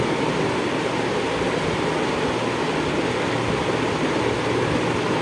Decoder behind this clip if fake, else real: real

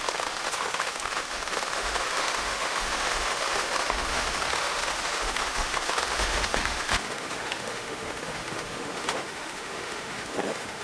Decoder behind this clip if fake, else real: fake, autoencoder, DAC-VAE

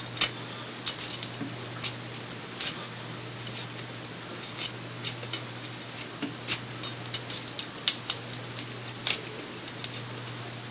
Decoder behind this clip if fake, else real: real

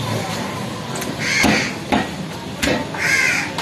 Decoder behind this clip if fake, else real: real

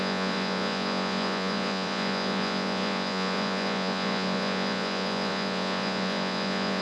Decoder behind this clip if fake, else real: fake, vocoder, Vocos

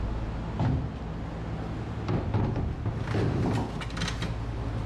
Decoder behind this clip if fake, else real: real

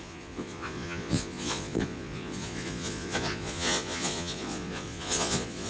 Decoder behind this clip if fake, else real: fake, vocoder, Vocos